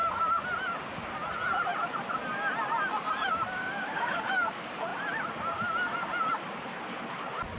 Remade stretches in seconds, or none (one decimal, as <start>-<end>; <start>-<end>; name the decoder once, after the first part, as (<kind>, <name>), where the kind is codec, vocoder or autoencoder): 3.6-4.2 (codec, DAC)